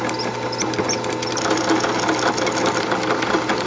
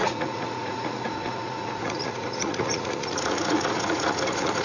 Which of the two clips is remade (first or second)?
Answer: second